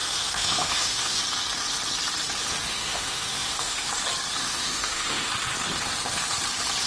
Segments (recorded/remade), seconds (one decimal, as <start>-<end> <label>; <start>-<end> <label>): 0.0-1.2 remade; 1.2-2.7 recorded; 2.7-3.9 remade; 3.9-4.4 recorded; 4.4-5.3 remade; 5.3-6.9 recorded